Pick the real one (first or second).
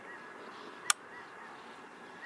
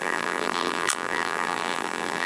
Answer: first